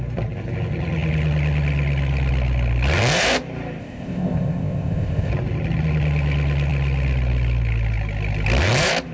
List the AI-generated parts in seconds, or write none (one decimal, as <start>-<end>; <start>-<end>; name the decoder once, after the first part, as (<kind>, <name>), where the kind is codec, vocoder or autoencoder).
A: 3.8-5.3 (codec, ZipCodec)